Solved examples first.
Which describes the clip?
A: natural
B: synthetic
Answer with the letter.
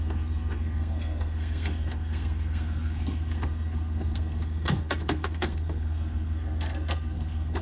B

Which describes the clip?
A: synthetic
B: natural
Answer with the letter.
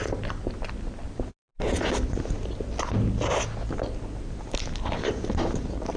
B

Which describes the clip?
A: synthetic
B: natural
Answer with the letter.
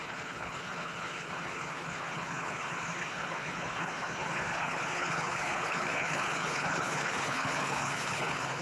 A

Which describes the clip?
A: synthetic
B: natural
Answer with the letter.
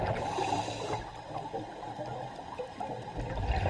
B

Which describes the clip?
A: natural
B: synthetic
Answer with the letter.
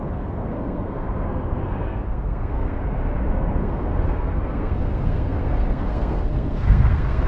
B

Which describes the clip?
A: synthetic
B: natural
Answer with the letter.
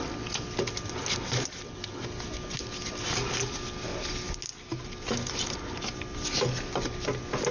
B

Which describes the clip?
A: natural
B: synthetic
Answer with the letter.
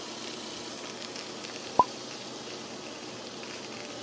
A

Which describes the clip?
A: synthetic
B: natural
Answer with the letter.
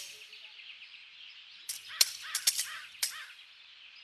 A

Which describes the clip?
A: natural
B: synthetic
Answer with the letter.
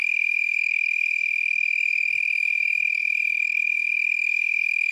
B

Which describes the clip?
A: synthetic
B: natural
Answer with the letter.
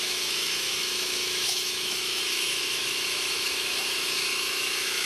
A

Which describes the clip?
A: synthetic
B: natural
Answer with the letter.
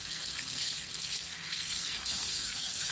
A